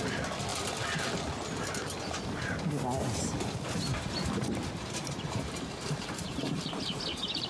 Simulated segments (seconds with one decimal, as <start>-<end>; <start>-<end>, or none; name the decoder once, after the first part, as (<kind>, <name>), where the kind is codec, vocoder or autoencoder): 3.9-7.5 (vocoder, BigVGAN v2)